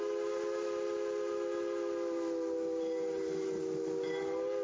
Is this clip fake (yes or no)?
no